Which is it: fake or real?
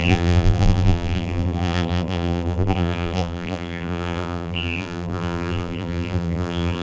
fake